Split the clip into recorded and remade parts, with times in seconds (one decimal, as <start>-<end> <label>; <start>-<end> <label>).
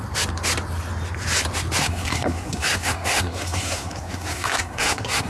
0.0-1.8 recorded; 1.8-5.3 remade